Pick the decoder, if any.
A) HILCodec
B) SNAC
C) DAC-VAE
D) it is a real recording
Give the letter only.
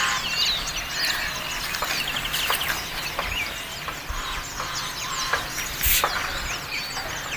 D